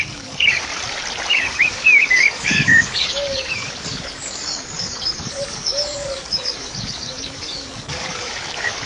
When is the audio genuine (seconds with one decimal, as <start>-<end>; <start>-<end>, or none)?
0.7-1.3